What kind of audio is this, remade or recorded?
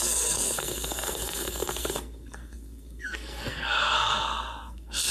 remade